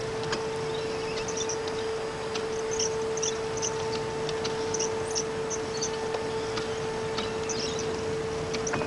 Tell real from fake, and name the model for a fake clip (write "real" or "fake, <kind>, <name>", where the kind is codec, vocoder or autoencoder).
real